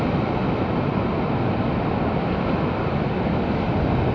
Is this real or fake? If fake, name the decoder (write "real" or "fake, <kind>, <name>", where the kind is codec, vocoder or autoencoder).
real